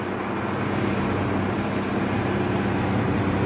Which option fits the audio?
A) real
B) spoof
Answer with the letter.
A